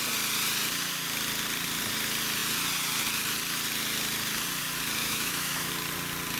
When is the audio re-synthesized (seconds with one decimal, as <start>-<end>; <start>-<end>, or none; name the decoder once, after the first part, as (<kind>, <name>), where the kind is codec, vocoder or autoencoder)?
5.0-5.7 (autoencoder, DAC-VAE)